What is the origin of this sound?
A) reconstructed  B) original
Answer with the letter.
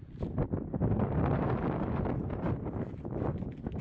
B